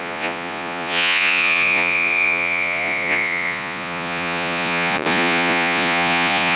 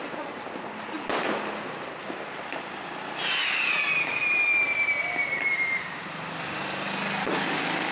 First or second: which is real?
second